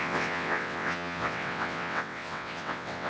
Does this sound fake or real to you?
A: fake